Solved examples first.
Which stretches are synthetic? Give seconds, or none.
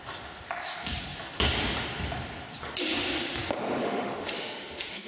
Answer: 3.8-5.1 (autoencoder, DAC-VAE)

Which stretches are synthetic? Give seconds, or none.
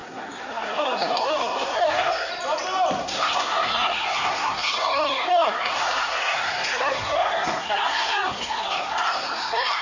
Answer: 0.0-2.3 (codec, SNAC); 3.0-9.8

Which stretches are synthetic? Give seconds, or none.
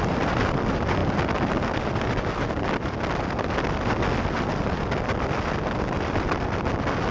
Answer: none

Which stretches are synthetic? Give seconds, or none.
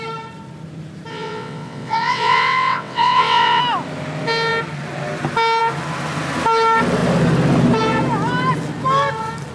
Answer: 1.1-3.6 (vocoder, WaveNeXt)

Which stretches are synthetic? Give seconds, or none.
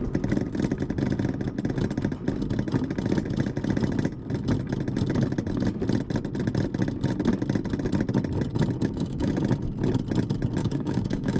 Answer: 8.8-9.3 (codec, DAC); 10.6-11.4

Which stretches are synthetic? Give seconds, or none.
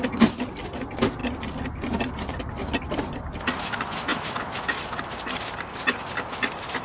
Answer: 4.1-4.8 (autoencoder, DAC-VAE)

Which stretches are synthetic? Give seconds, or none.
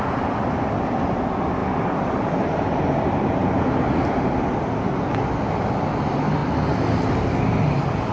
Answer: 1.6-2.2 (vocoder, BigVGAN v2)